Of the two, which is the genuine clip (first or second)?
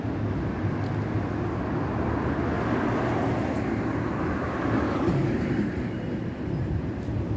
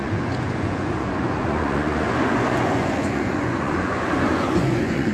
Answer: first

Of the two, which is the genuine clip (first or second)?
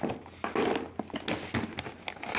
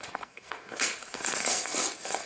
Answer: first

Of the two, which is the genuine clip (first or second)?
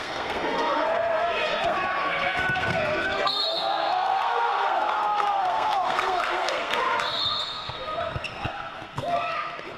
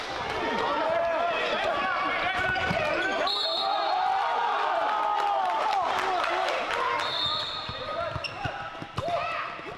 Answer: second